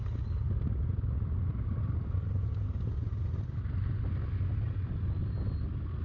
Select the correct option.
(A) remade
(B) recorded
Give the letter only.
B